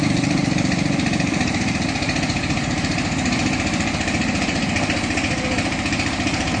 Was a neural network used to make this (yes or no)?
yes